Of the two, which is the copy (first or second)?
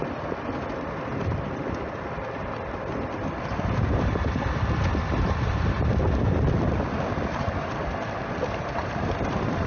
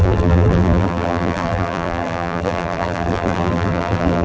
second